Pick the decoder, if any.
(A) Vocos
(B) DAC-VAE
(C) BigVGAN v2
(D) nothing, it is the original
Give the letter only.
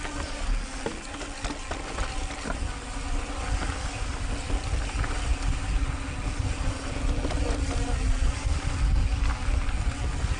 D